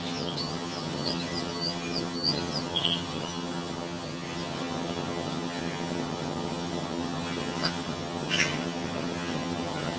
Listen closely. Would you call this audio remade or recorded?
remade